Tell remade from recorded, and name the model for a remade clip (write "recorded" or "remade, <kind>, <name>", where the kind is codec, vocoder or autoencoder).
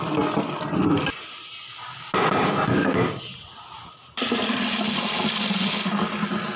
recorded